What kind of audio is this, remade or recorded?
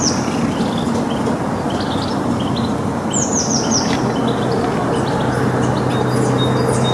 recorded